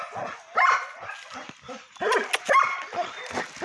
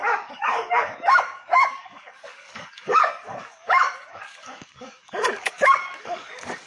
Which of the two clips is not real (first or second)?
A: second